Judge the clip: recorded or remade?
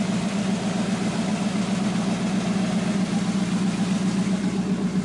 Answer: recorded